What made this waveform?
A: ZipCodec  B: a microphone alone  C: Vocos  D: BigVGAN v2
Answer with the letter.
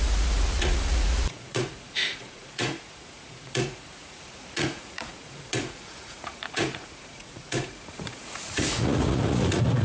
C